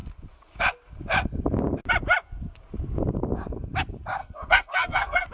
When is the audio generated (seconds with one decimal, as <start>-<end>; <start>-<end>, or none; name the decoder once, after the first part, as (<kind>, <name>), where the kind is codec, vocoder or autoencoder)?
4.2-5.3 (codec, SNAC)